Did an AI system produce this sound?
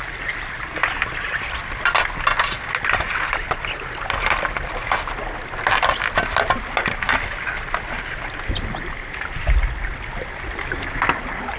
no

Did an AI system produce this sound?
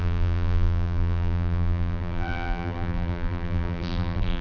yes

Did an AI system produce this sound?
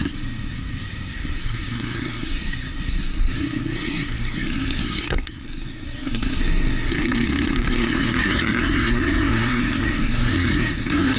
yes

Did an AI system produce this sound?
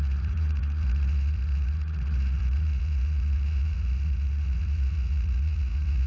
yes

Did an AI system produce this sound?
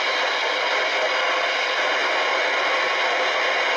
no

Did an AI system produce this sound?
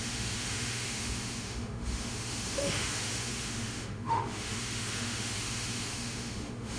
yes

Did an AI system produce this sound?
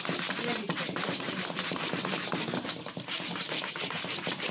no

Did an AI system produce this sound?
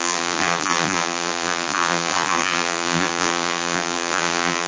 yes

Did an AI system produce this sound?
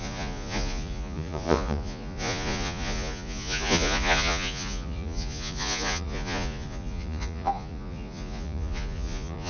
yes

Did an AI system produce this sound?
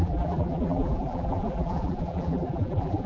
yes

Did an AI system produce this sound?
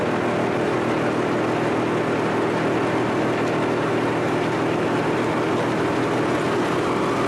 no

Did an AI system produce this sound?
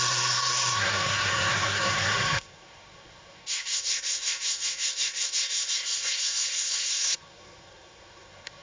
yes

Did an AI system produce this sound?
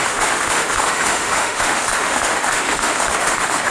yes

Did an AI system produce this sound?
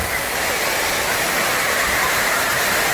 no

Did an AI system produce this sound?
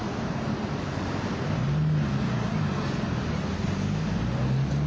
no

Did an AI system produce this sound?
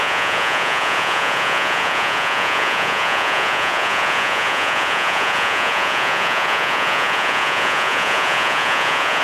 yes